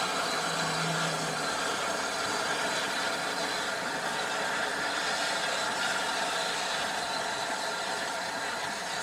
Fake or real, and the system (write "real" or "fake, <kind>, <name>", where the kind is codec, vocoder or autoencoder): real